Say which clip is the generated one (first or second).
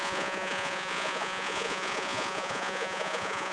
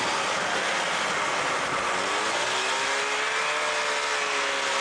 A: first